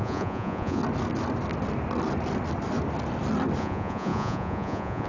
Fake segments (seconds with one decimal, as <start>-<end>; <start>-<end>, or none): 0.0-0.8; 3.6-5.1